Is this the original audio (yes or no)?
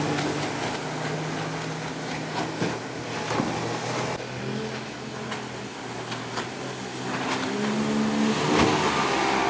yes